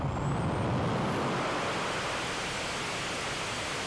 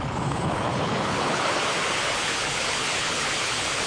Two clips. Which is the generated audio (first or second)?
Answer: second